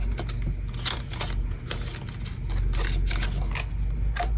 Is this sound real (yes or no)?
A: yes